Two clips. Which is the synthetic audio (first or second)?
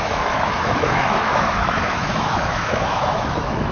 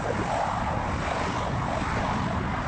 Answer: first